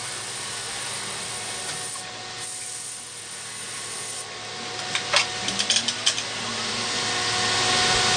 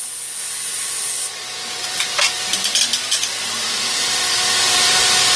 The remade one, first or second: second